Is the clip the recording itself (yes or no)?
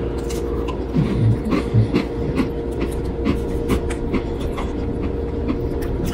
yes